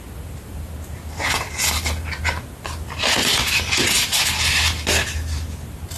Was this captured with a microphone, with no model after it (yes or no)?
yes